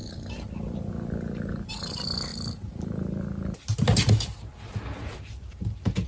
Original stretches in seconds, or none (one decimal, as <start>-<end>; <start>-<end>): 0.0-6.1